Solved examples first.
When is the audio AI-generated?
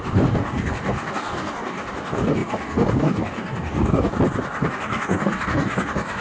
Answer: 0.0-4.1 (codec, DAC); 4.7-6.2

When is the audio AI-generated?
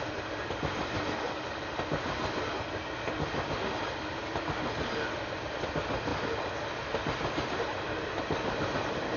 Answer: none